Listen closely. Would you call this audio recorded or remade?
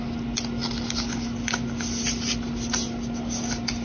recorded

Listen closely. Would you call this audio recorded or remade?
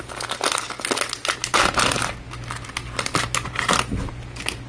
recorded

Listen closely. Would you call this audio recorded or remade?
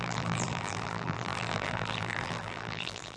remade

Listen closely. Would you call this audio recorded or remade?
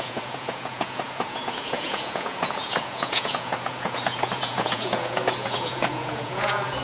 remade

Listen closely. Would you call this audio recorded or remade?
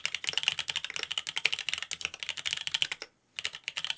recorded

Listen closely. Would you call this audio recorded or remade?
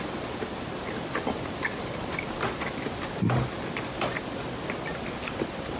recorded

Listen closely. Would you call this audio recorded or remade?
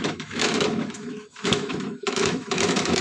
remade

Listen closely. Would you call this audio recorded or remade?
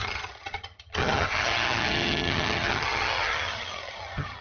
remade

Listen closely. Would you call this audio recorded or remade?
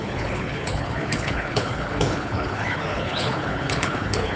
remade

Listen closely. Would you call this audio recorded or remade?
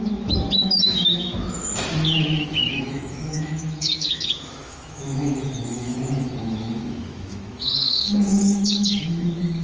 remade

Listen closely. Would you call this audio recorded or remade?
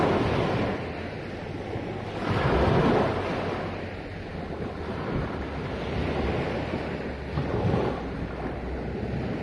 recorded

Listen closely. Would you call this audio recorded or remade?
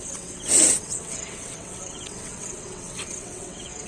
remade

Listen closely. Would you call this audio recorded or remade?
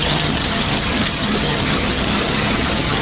remade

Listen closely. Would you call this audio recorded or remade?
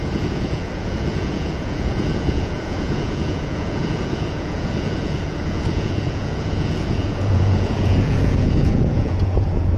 remade